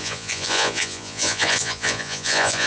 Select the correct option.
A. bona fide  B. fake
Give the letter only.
B